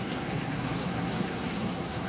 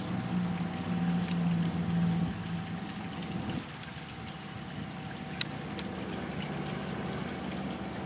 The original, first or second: second